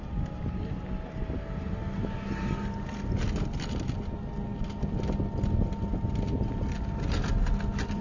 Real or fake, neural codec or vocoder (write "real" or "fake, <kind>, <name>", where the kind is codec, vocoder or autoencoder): real